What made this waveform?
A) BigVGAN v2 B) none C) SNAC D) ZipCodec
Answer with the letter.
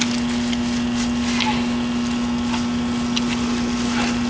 B